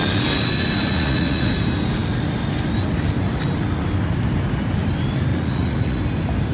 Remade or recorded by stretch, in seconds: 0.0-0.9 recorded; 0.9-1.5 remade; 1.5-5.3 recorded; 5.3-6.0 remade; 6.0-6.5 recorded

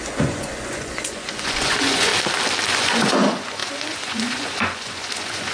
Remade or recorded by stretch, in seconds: 0.0-2.1 remade; 2.1-2.7 recorded; 2.7-5.5 remade

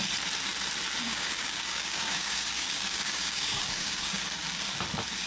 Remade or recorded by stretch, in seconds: 0.0-1.0 recorded; 1.0-4.2 remade; 4.2-5.3 recorded

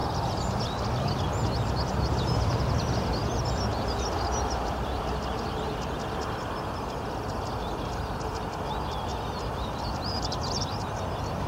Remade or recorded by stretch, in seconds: 0.0-11.5 recorded

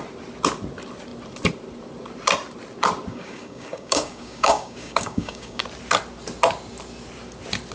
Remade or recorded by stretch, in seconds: 0.0-3.1 recorded; 3.1-5.6 remade; 5.6-7.7 recorded

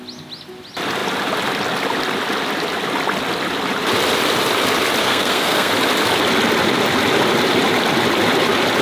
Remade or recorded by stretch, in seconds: 0.0-5.0 recorded; 5.0-5.7 remade; 5.7-8.8 recorded

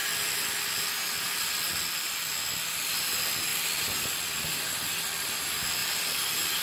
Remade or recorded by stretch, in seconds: 0.0-6.6 recorded